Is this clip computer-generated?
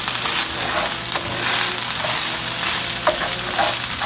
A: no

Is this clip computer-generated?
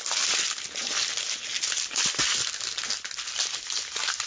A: no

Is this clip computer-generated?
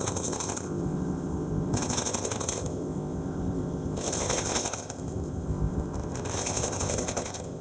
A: yes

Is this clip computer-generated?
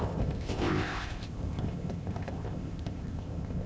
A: yes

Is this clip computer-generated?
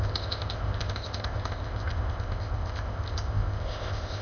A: yes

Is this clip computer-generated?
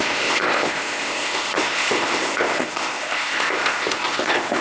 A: yes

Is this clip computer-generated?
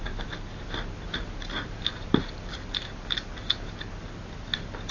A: no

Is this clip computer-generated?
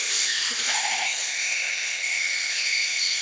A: yes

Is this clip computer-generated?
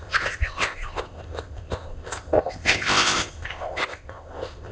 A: yes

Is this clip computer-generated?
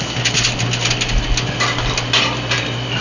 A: no